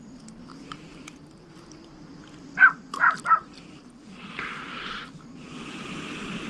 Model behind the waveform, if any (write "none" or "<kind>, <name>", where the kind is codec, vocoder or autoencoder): none